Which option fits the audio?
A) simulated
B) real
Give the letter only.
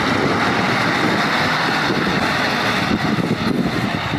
B